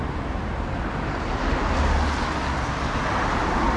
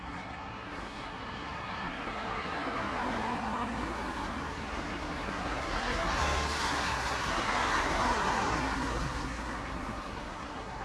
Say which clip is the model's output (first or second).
second